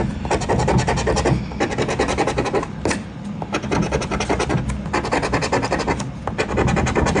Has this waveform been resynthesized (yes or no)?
no